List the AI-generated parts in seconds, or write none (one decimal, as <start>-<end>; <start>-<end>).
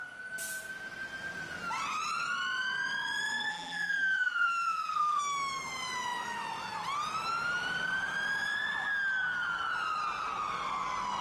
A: 3.5-5.2